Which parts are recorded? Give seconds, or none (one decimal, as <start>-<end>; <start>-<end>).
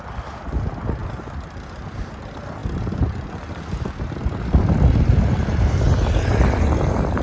0.0-7.2